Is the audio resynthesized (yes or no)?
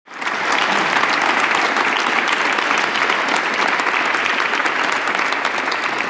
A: no